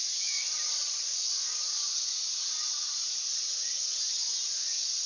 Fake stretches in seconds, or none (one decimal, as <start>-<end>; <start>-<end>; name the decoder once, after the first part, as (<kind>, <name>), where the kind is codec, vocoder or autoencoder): none